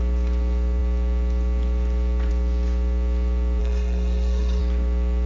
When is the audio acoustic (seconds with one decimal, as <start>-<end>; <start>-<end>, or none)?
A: 0.0-3.6; 4.6-5.3